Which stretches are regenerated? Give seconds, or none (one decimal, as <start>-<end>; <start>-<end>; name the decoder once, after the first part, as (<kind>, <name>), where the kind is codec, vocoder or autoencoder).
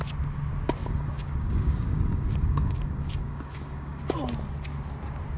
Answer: 0.8-4.0 (codec, DAC)